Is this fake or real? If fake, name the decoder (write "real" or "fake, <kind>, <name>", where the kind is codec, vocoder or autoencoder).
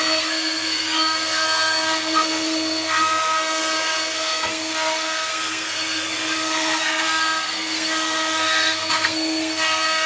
fake, codec, SNAC